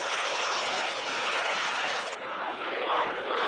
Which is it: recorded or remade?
remade